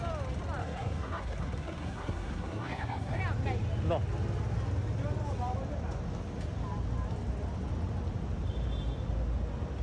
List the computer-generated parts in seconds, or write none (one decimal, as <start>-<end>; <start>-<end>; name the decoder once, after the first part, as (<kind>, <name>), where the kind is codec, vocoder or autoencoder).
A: 0.6-3.2 (codec, SNAC)